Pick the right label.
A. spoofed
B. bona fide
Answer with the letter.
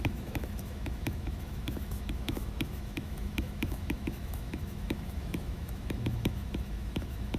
A